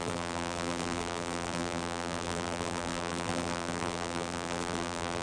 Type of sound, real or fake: fake